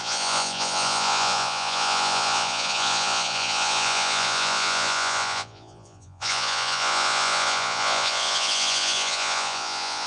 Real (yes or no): no